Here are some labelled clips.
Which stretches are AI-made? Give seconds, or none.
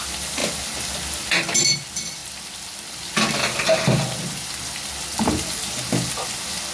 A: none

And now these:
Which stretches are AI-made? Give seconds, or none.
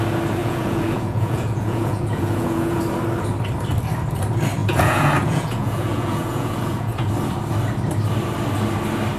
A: 0.4-2.8 (vocoder, Vocos); 4.6-7.1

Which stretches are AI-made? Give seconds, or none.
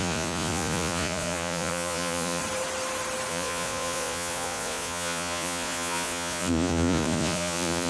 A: 0.0-2.4 (vocoder, Vocos); 3.3-7.9